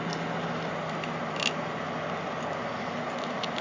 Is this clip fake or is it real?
real